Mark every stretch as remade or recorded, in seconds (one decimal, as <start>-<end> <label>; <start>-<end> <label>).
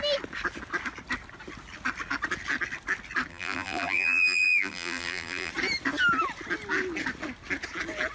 0.0-3.3 recorded; 3.3-5.5 remade; 5.5-8.1 recorded